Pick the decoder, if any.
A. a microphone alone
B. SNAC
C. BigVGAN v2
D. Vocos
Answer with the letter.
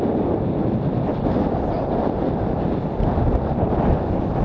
A